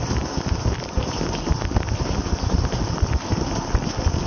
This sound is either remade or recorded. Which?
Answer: recorded